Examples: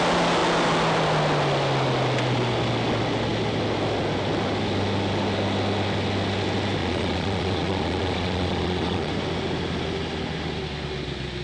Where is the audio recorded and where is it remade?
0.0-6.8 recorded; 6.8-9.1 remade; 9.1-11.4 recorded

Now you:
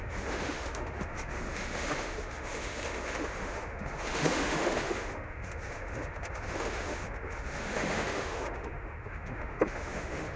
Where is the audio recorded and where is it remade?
0.0-10.4 remade

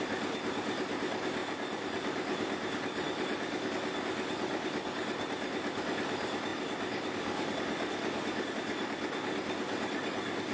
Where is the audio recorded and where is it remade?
0.0-10.5 recorded

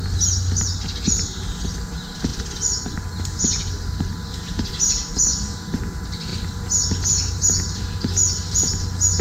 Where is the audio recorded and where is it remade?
0.0-9.2 recorded